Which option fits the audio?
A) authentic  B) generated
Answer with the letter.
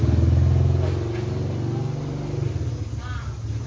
A